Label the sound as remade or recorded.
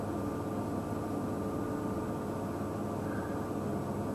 recorded